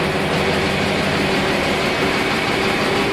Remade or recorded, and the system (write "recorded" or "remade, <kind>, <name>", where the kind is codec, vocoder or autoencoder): recorded